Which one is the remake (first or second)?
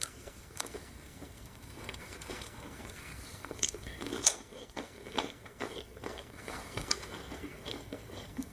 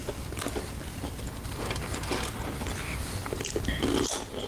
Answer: first